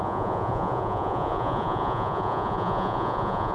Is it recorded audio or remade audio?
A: remade